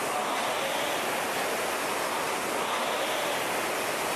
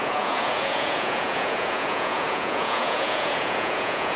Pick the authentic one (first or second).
first